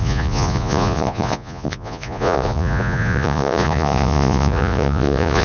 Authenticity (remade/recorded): remade